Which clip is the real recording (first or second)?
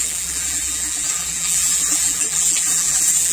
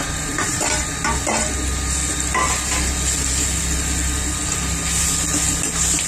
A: second